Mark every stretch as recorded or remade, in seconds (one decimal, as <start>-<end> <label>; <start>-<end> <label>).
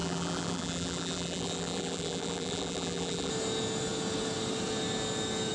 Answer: 0.0-3.3 remade; 3.3-5.5 recorded